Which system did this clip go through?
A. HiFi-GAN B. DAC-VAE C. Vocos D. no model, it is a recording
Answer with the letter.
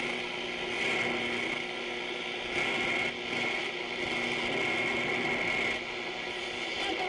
D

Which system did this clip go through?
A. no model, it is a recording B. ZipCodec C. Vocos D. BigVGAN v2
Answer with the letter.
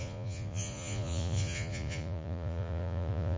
C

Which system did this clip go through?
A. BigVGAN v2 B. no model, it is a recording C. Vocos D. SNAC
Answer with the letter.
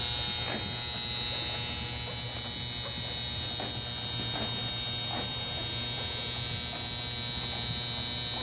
B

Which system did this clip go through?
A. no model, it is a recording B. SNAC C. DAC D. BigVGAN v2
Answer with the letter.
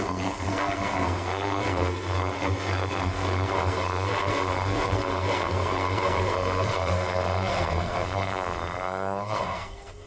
B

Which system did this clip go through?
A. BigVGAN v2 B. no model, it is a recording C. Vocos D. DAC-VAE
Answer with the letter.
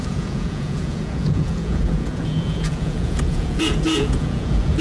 C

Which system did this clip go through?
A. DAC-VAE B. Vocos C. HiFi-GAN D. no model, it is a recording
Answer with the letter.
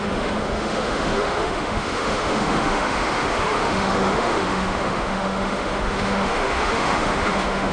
A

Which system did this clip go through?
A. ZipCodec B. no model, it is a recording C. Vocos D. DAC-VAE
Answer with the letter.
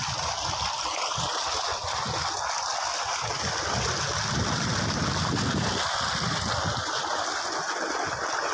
B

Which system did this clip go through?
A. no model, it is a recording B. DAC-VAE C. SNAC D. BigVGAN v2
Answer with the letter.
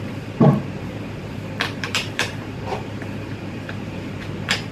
D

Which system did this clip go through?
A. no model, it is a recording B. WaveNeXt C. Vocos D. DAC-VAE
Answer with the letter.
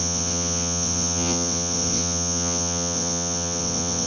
B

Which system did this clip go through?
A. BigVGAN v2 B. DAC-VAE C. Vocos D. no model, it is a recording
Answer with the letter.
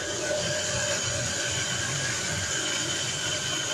C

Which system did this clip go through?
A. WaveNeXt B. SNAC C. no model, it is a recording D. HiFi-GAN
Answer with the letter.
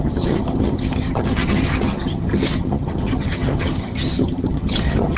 D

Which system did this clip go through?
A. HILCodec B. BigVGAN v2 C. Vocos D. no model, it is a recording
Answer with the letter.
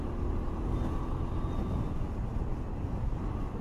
D